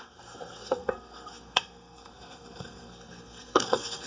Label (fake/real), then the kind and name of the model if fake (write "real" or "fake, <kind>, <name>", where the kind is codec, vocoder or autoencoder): fake, codec, SNAC